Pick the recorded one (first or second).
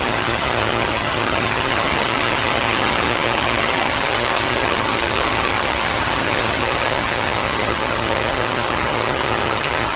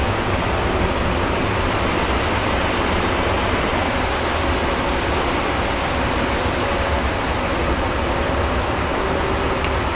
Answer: second